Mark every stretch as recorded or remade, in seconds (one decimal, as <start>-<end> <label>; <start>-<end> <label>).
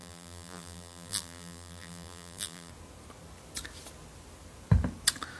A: 0.0-2.7 remade; 2.7-5.4 recorded